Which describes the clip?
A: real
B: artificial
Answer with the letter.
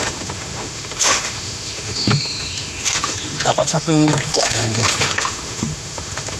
B